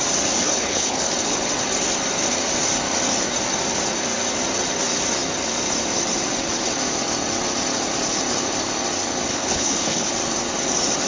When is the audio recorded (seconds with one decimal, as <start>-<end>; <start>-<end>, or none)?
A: 0.0-0.4; 1.1-9.3; 10.1-11.1